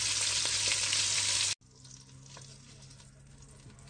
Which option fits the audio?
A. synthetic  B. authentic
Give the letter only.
B